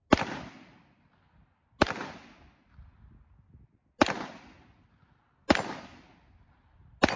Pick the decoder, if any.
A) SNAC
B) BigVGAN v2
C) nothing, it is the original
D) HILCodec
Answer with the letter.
C